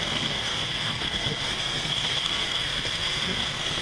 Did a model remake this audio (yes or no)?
yes